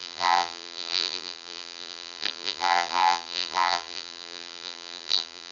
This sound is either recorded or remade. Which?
remade